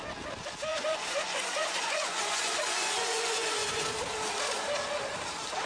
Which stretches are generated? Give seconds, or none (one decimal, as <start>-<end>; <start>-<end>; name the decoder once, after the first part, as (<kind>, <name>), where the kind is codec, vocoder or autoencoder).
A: 0.7-3.9 (vocoder, Vocos)